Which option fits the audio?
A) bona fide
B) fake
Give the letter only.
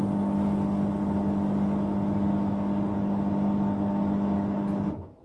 A